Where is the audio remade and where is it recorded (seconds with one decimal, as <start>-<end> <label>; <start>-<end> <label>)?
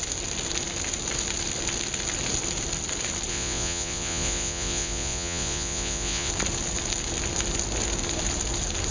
0.0-3.3 recorded; 3.3-6.3 remade; 6.3-8.9 recorded